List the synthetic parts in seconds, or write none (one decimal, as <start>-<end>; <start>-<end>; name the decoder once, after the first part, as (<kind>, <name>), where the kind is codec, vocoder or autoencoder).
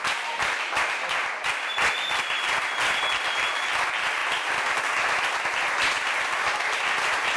none